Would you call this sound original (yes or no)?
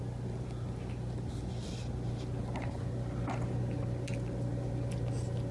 yes